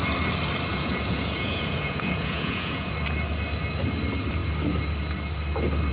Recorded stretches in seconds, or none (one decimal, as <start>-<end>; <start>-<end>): 0.0-0.7; 2.9-5.9